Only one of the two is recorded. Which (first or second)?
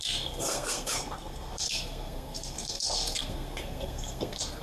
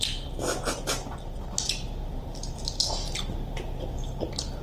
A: second